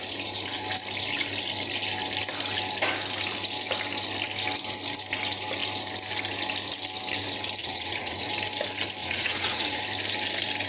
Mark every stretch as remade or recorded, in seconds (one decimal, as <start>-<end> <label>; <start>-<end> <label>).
0.0-7.6 recorded; 7.6-8.3 remade; 8.3-9.0 recorded; 9.0-9.8 remade; 9.8-10.7 recorded